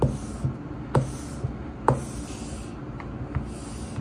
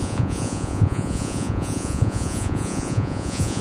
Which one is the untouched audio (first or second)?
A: first